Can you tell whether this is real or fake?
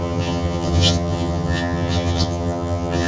fake